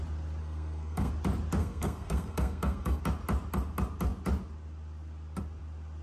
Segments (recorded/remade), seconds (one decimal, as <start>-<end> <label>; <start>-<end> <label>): 0.0-0.4 recorded; 0.4-1.1 remade; 1.1-1.6 recorded; 1.6-3.0 remade; 3.0-6.0 recorded